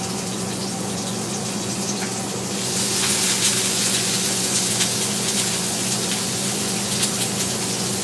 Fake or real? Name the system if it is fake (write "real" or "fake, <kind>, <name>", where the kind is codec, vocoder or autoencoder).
fake, vocoder, Vocos